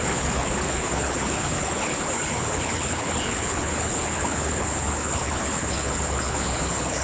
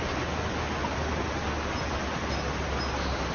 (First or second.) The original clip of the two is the second